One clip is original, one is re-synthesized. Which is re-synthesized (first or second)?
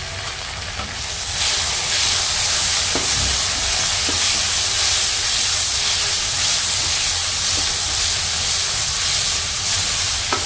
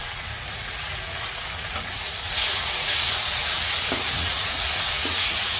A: second